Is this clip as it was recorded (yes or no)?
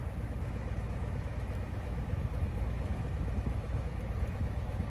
no